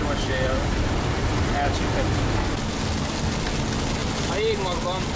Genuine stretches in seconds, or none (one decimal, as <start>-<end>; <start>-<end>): 0.0-5.2